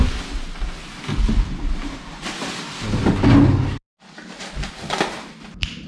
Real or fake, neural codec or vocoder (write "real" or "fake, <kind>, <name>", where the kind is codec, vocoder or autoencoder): real